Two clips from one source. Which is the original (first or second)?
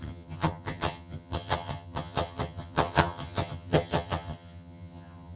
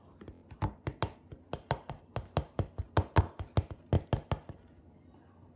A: second